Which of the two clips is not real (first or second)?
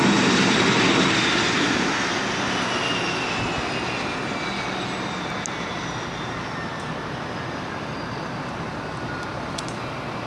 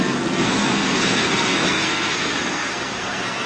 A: second